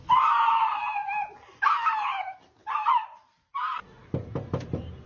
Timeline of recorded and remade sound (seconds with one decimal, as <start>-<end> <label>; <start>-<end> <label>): 0.0-2.6 recorded; 2.6-3.5 remade; 3.5-4.0 recorded; 4.0-5.1 remade